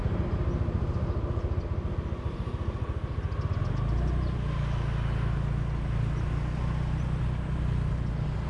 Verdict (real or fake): real